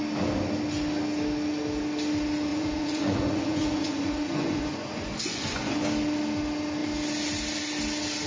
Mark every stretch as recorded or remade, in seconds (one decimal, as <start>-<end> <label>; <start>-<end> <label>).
0.0-2.5 recorded; 2.5-5.8 remade; 5.8-8.3 recorded